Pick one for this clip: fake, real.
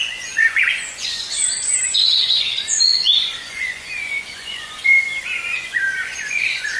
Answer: fake